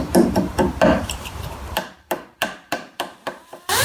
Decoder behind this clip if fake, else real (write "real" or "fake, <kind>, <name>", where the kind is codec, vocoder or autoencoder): fake, vocoder, BigVGAN v2